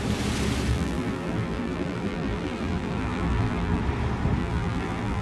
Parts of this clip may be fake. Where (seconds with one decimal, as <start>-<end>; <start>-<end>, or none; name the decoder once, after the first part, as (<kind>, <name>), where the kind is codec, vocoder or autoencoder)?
0.7-3.8 (vocoder, BigVGAN v2); 4.4-5.2